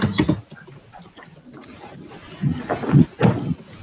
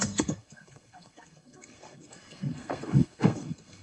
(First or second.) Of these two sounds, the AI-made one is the second